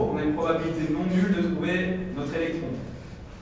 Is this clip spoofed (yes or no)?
no